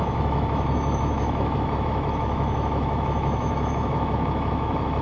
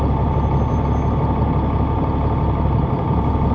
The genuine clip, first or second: second